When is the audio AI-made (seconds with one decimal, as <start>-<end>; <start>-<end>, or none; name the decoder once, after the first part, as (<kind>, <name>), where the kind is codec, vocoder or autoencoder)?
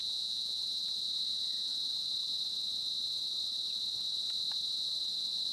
0.0-0.6 (vocoder, Vocos)